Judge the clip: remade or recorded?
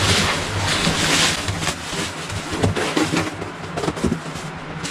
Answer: recorded